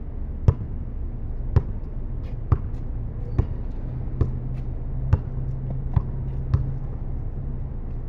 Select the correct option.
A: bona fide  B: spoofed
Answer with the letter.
A